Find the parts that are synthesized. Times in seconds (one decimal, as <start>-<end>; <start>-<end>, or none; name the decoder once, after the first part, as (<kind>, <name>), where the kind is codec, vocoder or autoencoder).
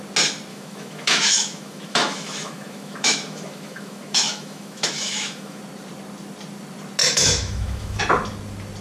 0.5-5.6 (autoencoder, DAC-VAE); 7.0-8.0